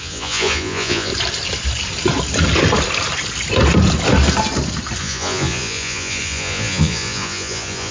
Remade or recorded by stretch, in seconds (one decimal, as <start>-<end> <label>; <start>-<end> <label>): 0.0-1.1 remade; 1.1-5.0 recorded; 5.0-7.9 remade